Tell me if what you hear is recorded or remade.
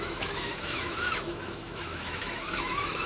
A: remade